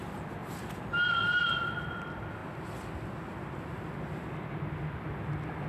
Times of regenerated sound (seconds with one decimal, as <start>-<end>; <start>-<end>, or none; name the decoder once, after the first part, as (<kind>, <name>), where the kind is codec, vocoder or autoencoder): none